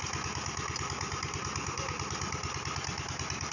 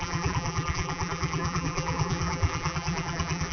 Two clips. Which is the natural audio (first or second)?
first